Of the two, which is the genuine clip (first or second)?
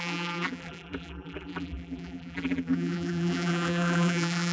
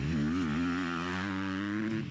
second